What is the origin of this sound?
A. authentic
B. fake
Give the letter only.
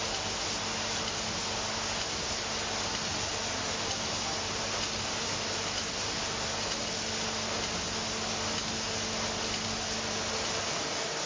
A